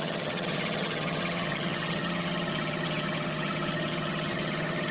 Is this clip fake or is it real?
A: fake